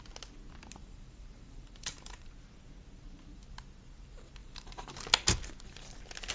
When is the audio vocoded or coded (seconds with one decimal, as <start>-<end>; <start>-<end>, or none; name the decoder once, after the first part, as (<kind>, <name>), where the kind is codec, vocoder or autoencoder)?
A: 0.8-2.3 (vocoder, BigVGAN v2); 4.4-4.9